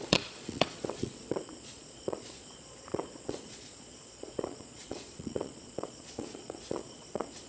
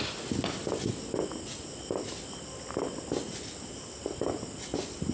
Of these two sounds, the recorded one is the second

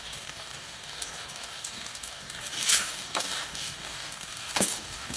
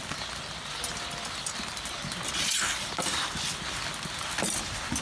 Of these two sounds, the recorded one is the second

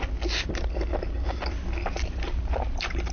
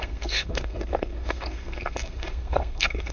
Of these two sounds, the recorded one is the first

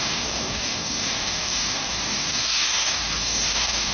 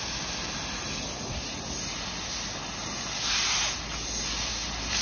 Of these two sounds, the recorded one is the second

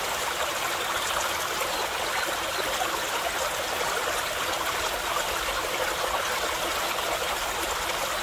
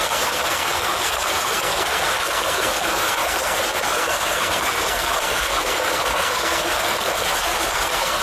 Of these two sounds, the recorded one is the first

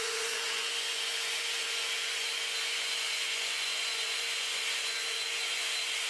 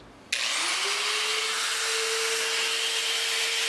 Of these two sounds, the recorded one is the second